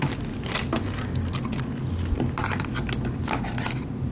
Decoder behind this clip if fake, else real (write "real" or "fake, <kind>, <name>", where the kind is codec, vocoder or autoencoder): real